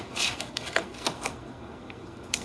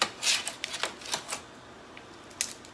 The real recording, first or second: second